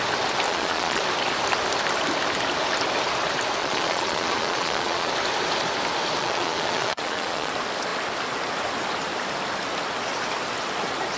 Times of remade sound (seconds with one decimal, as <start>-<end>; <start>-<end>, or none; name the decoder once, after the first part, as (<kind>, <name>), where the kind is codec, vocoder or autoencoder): 0.5-1.0 (vocoder, Vocos); 3.6-5.1; 6.2-7.5